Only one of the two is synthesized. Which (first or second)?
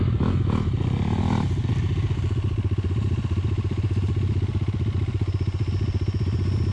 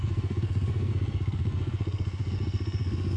second